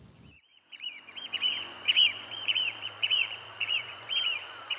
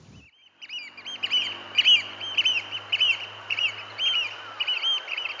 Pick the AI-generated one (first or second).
first